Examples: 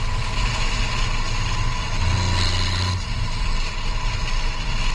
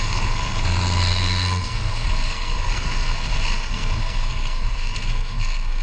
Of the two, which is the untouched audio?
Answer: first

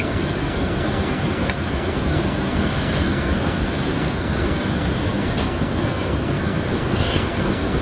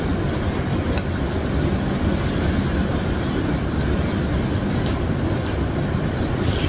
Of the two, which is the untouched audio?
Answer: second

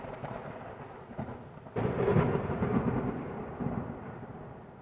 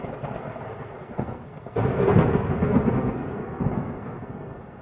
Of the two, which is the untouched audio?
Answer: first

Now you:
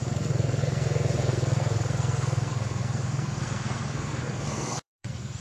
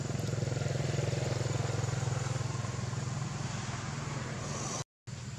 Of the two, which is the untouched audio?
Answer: second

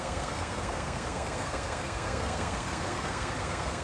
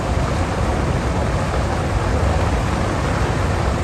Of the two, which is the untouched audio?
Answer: second